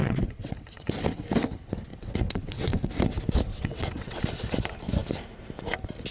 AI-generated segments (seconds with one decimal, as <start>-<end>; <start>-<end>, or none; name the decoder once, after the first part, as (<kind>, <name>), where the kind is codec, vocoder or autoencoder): 0.0-0.9 (vocoder, WaveNeXt); 1.9-2.9; 3.5-4.2